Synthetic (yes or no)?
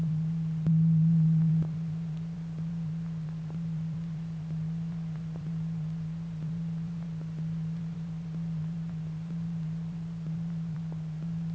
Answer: yes